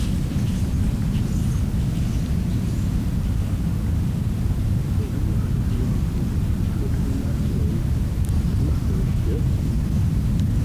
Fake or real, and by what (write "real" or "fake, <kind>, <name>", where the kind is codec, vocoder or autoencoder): real